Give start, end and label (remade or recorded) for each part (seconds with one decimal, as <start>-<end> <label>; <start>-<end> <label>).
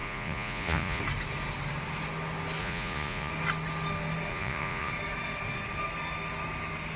0.0-1.0 remade; 1.0-2.6 recorded; 2.6-3.3 remade; 3.3-4.3 recorded; 4.3-4.9 remade; 4.9-7.0 recorded